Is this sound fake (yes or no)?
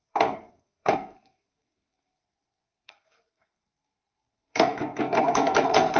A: yes